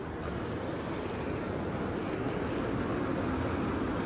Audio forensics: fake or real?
real